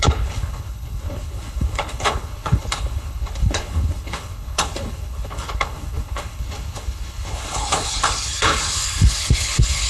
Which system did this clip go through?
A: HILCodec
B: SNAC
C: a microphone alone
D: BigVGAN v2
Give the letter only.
A